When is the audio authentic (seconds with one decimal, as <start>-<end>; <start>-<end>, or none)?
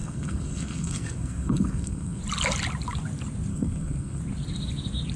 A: 2.2-3.5; 4.2-5.2